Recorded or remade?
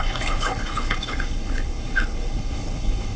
remade